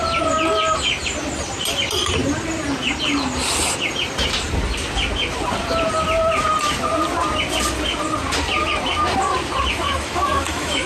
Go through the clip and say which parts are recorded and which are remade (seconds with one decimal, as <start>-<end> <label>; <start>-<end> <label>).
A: 0.0-9.7 recorded; 9.7-10.9 remade